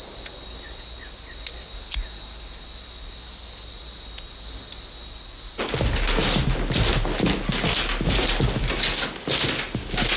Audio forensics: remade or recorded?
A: recorded